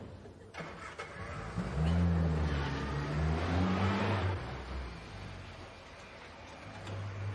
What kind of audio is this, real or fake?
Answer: real